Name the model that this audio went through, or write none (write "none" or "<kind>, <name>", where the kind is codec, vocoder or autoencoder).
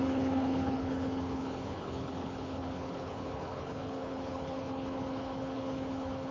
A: codec, HILCodec